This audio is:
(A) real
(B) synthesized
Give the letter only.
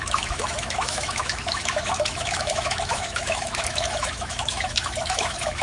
B